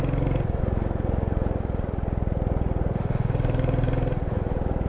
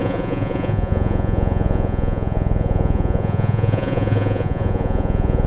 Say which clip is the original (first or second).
first